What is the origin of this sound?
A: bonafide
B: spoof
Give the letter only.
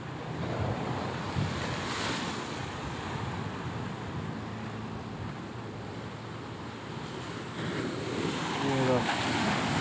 A